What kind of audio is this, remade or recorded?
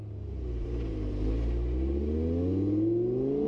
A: recorded